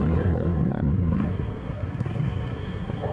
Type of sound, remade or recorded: remade